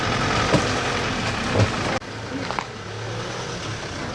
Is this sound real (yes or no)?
yes